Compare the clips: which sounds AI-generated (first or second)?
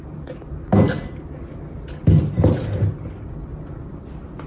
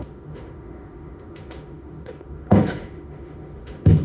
second